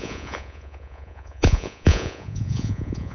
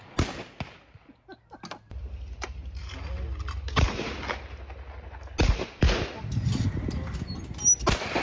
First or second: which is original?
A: second